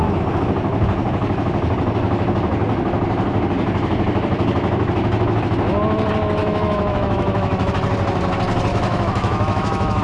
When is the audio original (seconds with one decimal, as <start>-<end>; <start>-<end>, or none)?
0.0-6.4; 7.7-8.7